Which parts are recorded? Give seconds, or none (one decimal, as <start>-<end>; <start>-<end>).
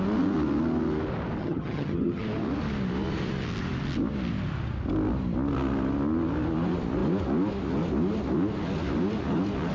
0.0-1.4; 2.2-9.7